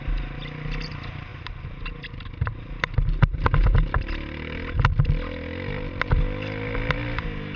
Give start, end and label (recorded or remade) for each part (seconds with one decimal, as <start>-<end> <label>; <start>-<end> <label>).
0.0-7.6 recorded